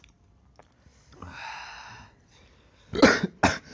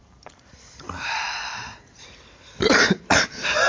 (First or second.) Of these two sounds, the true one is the first